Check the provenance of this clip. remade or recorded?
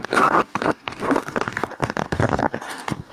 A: remade